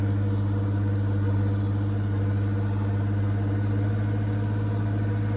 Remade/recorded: recorded